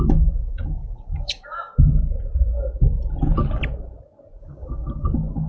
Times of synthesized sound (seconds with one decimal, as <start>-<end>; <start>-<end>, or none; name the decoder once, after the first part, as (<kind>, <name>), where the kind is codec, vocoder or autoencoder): 0.0-1.7 (codec, DAC); 4.4-5.5